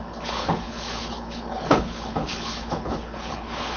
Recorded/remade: remade